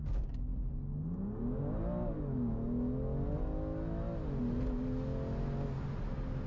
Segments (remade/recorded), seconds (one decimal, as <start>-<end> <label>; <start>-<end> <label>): 0.0-6.5 recorded